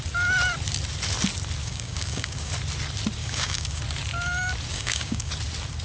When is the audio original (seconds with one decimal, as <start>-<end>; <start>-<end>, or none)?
0.0-1.6; 2.5-3.2; 3.8-4.7; 5.3-5.8